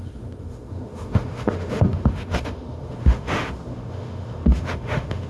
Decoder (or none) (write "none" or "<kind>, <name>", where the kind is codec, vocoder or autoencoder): autoencoder, DAC-VAE